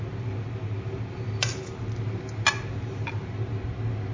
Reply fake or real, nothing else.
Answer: real